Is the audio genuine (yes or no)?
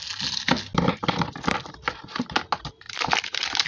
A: yes